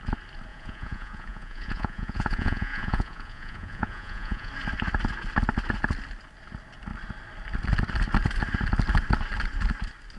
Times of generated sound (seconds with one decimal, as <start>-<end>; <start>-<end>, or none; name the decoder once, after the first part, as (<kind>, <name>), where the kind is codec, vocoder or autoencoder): 0.5-4.5 (vocoder, Vocos)